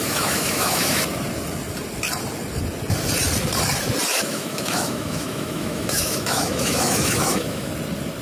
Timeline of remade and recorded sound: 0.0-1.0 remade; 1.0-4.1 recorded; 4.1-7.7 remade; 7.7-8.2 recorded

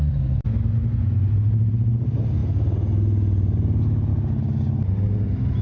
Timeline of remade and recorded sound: 0.0-5.6 recorded

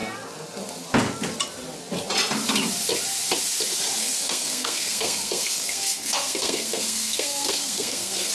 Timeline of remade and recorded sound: 0.0-4.0 recorded; 4.0-8.3 remade